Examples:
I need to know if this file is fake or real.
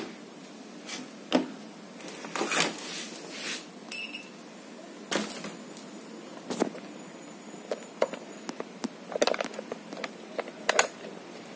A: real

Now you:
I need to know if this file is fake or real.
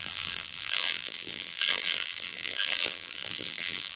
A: fake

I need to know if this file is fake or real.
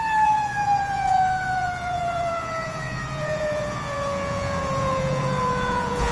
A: fake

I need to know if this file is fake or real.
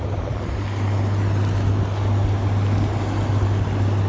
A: real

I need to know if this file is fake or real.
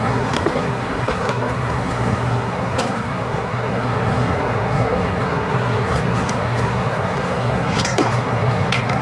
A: fake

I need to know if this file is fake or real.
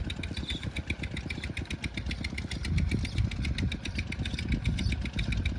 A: real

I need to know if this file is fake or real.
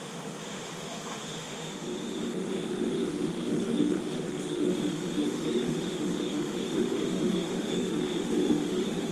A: fake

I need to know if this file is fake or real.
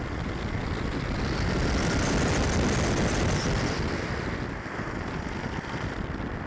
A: real